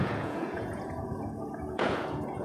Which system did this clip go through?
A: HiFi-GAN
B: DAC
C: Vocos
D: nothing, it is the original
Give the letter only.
C